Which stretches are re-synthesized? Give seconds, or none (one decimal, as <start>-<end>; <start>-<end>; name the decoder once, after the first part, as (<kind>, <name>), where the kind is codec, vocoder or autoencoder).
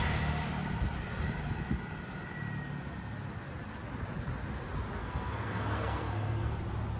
5.0-6.6 (codec, SNAC)